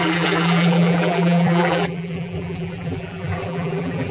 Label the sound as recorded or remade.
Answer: remade